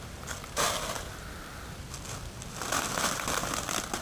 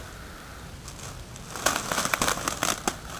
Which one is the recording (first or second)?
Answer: second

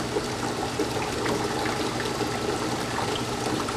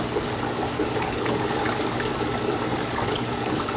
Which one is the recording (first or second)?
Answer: first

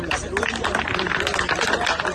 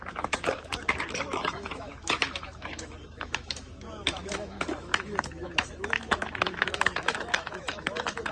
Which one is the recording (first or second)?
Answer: first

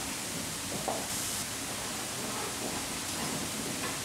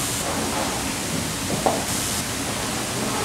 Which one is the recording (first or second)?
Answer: second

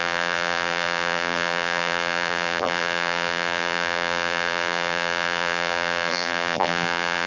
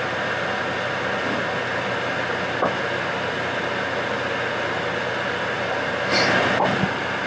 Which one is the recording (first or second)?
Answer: second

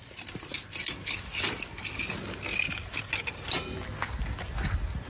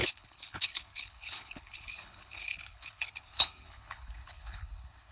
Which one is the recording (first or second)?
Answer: first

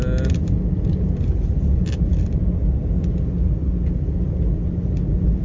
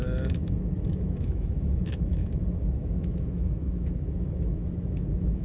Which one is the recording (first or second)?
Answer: first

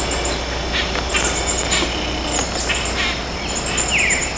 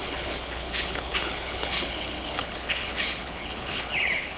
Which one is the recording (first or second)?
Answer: first